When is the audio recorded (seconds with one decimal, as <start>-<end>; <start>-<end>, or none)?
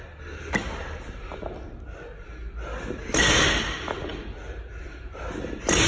0.0-5.9